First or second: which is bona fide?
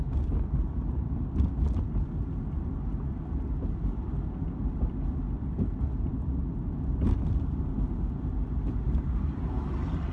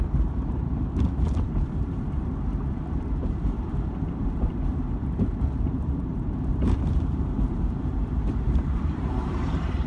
first